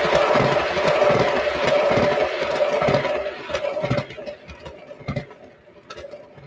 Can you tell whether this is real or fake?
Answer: real